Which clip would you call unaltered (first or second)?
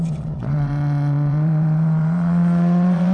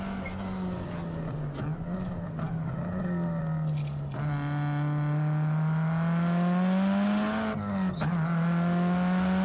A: second